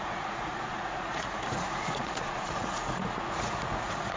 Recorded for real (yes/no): no